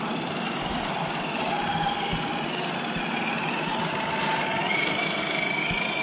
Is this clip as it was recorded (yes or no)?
yes